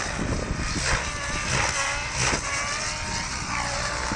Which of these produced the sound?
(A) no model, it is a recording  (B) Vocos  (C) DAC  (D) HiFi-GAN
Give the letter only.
A